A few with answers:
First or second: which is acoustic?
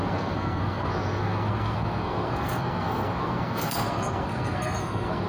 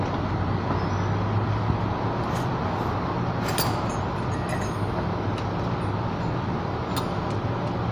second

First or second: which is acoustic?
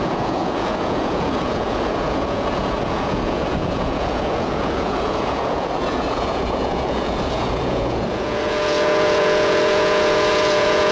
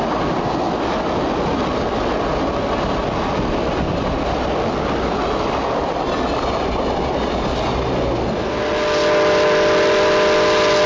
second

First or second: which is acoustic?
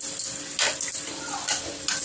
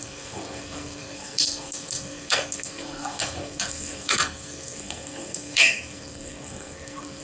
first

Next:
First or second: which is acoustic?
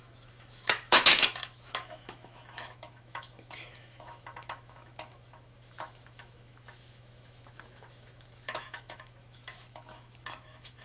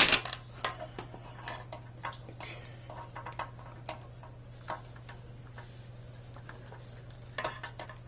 second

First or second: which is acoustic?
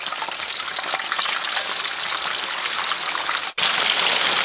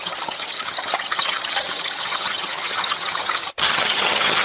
first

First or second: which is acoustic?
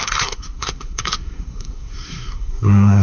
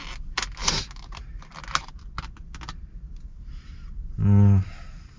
second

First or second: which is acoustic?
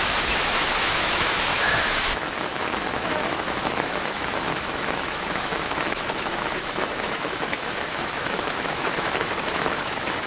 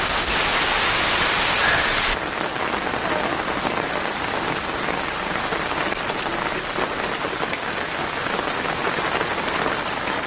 second